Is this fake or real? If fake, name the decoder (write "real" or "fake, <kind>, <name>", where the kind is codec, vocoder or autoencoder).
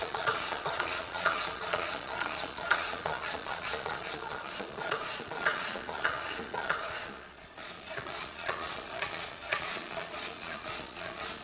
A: fake, vocoder, Vocos